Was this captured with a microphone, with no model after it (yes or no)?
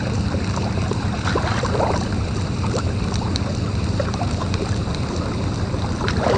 no